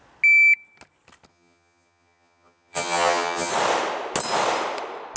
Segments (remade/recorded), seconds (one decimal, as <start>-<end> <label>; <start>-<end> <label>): 0.0-1.3 recorded; 1.3-3.5 remade; 3.5-5.2 recorded